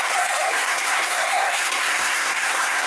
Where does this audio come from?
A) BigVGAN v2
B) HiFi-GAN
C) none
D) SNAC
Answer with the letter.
D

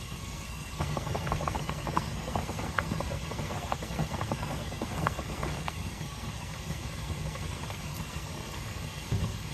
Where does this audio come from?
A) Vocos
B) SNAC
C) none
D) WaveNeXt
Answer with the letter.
B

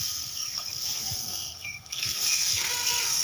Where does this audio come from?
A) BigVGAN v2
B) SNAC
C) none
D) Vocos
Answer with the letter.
B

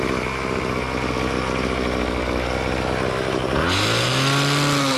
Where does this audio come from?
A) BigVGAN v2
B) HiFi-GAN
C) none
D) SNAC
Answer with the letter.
C